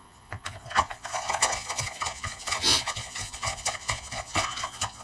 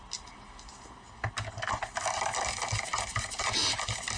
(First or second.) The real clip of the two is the second